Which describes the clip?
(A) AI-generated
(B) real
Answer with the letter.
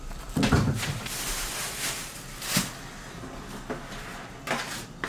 B